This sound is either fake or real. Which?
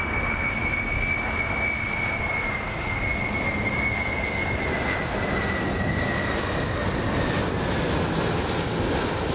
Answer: real